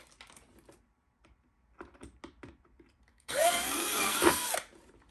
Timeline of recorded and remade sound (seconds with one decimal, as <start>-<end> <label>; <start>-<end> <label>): 0.0-3.1 recorded; 3.1-4.5 remade; 4.5-5.1 recorded